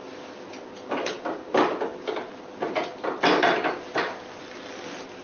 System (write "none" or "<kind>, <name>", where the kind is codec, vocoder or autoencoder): none